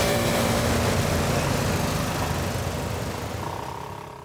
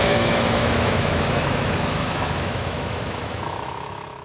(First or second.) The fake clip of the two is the second